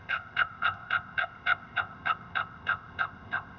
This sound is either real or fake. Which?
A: fake